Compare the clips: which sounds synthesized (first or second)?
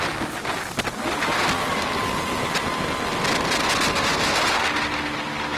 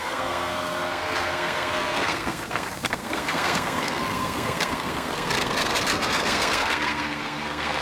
second